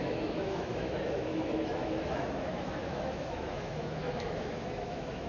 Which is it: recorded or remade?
remade